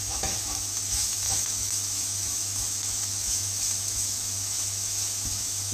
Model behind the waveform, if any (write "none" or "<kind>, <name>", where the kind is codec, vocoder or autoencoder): autoencoder, DAC-VAE